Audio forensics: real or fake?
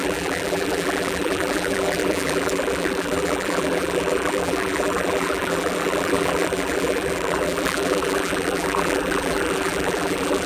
fake